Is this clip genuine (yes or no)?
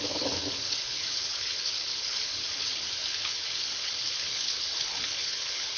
no